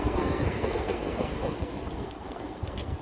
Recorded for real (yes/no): no